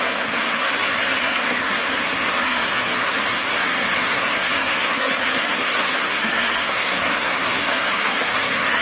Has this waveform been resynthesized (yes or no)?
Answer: yes